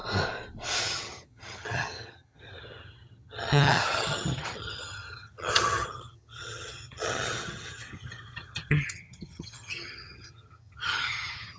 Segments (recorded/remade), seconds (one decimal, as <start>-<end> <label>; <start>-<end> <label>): 0.0-0.8 recorded; 0.8-11.6 remade